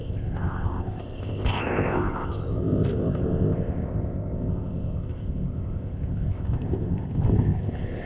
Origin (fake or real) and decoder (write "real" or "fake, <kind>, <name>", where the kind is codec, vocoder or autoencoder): fake, codec, ZipCodec